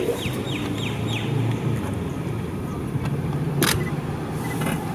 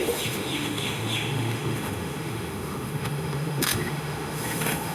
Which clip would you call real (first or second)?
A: first